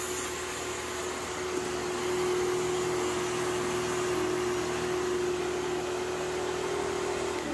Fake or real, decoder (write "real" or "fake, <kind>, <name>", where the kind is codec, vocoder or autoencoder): real